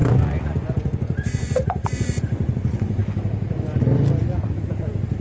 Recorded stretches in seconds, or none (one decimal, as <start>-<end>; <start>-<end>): 3.0-5.2